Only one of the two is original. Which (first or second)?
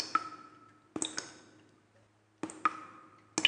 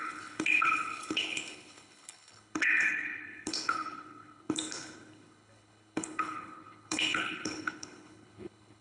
first